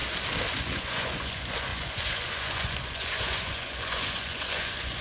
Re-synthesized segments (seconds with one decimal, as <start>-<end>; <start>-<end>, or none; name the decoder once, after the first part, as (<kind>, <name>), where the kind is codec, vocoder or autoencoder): 0.6-5.0 (vocoder, Vocos)